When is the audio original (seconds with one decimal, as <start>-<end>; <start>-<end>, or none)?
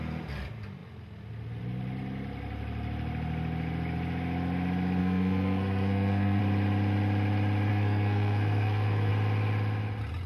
0.0-5.0; 6.4-7.7; 9.1-10.3